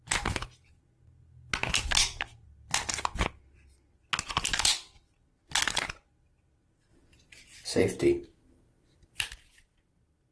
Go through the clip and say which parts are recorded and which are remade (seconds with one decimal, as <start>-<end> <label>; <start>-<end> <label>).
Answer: 0.0-10.3 recorded